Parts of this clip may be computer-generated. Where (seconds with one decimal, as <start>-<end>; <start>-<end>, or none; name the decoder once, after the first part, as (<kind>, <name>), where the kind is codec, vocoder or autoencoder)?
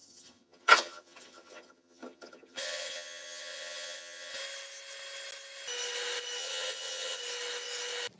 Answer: 0.0-4.4 (vocoder, HiFi-GAN); 6.4-7.2